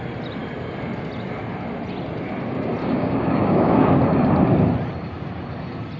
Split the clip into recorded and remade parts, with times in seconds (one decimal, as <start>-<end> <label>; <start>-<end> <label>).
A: 0.0-2.8 recorded; 2.8-4.0 remade; 4.0-6.0 recorded